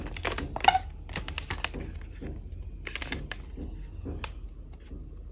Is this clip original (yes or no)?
yes